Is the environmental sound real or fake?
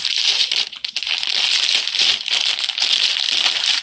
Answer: real